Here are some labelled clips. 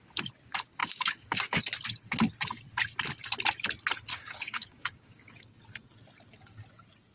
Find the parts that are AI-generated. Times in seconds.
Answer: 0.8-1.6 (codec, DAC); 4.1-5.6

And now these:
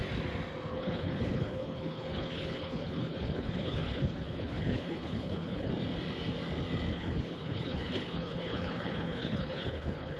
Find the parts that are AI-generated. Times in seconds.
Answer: 0.7-5.7 (codec, HILCodec); 6.9-10.2

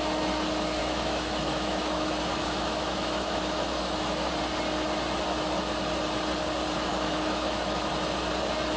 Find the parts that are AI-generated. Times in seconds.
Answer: 0.8-4.3 (autoencoder, DAC-VAE); 6.9-7.9

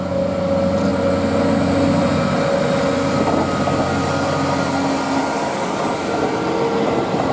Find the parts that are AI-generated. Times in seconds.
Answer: none

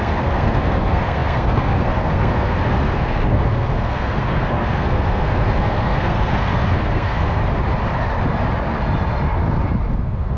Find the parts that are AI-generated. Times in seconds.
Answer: 0.0-7.4 (codec, SNAC); 9.9-10.4